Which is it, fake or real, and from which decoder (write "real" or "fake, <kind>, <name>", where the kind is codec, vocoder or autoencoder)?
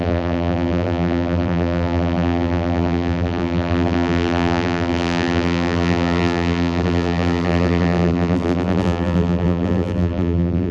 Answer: fake, vocoder, BigVGAN v2